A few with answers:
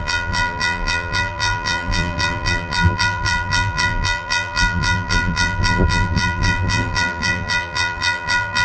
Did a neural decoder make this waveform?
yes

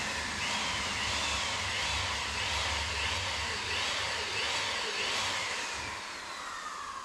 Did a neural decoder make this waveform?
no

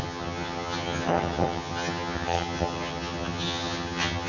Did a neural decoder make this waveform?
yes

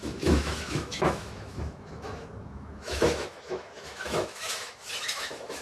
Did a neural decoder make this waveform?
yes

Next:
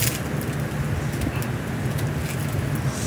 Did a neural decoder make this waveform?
no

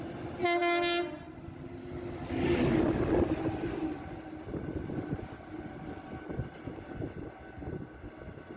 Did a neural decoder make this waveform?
no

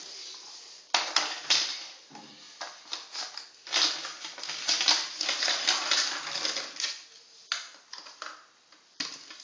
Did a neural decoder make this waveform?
no